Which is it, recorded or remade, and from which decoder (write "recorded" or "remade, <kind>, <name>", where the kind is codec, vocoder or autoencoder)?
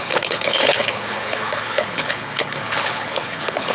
remade, codec, HILCodec